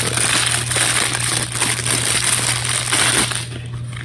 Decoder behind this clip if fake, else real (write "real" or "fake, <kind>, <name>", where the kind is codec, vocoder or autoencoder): real